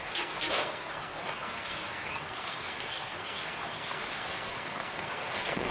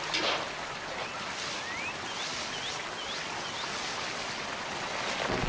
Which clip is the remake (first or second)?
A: first